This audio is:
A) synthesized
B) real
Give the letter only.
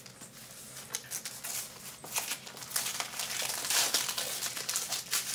B